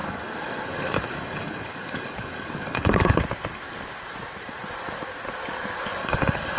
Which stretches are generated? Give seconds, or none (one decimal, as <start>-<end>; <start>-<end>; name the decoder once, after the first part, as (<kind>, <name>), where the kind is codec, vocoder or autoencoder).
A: 0.0-3.2 (codec, DAC); 6.0-6.6